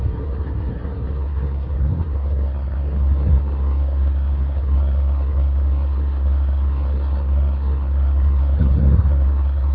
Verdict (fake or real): fake